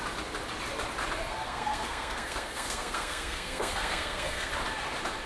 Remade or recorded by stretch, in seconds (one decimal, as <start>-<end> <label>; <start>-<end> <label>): 0.0-1.3 recorded; 1.3-4.5 remade; 4.5-5.3 recorded

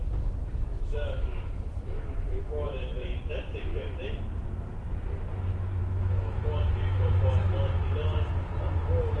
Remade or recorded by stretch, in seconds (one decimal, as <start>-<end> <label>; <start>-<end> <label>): 0.0-0.7 recorded; 0.7-3.3 remade; 3.3-5.8 recorded; 5.8-6.4 remade; 6.4-9.2 recorded

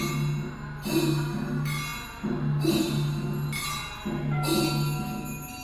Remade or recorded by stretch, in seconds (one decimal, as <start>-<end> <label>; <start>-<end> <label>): 0.0-5.6 recorded

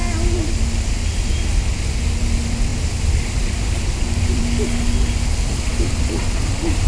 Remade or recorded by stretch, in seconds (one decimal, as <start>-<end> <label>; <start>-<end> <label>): 0.0-2.7 recorded; 2.7-4.4 remade; 4.4-5.7 recorded; 5.7-6.2 remade; 6.2-6.9 recorded

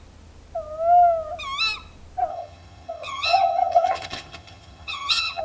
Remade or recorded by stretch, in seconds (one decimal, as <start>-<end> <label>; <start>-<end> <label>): 0.0-2.3 recorded; 2.3-5.4 remade